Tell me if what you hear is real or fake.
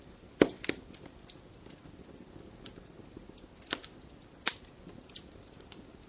real